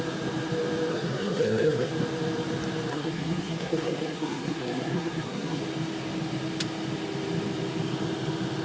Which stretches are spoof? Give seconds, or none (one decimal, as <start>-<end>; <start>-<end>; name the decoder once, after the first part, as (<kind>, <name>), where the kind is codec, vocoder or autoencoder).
0.9-1.9 (codec, SNAC); 2.9-5.6